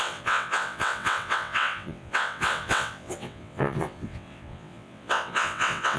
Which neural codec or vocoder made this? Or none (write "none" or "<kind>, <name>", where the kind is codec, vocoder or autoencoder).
vocoder, WaveNeXt